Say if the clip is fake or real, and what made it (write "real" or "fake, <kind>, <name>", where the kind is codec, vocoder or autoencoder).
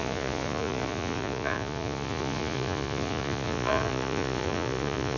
fake, vocoder, Vocos